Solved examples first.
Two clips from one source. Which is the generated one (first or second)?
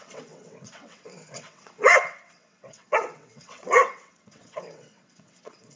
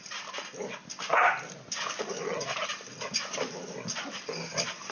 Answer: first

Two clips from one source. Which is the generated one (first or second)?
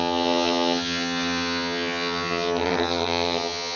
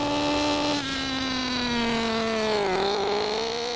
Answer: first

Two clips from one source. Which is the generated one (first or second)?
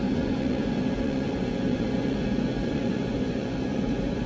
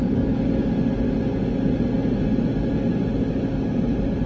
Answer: first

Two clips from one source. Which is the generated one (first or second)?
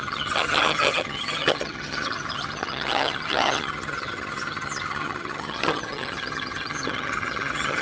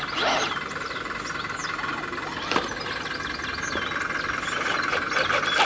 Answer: first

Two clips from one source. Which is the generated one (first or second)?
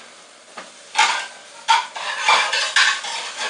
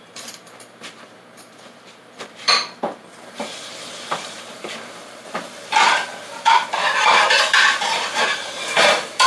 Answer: second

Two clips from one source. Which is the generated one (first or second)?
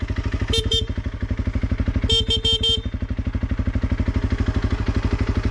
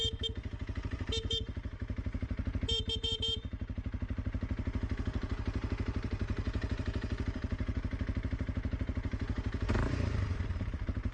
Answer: second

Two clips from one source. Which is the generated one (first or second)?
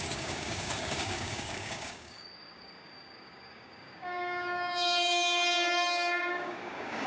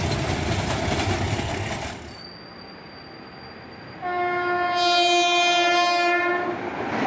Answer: first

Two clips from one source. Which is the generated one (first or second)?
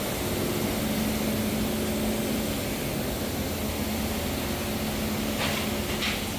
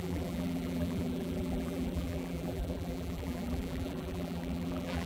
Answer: second